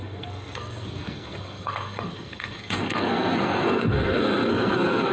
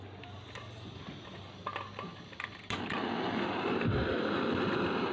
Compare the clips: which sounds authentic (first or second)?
second